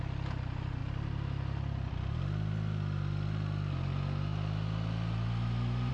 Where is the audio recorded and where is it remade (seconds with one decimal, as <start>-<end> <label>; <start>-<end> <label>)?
0.0-5.9 recorded